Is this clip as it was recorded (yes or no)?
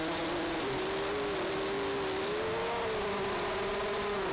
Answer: yes